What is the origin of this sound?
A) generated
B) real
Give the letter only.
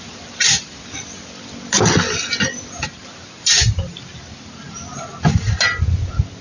B